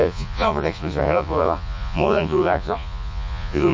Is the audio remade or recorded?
remade